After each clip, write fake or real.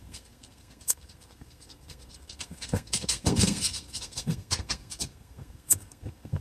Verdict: fake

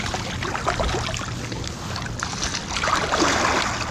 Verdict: real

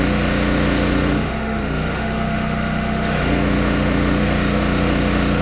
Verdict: fake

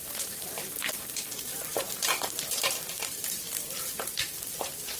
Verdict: fake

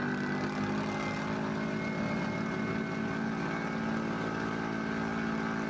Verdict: real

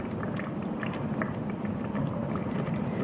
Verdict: fake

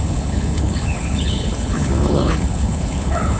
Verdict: fake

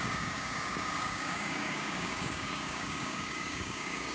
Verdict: fake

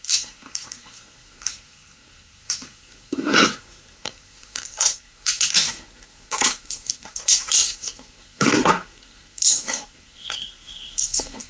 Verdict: fake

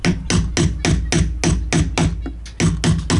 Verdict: real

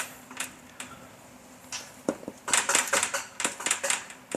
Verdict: real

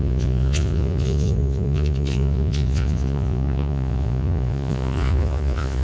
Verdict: fake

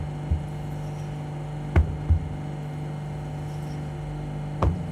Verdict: real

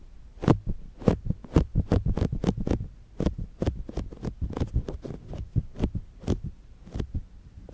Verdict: real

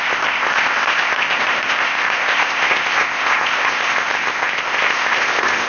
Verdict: fake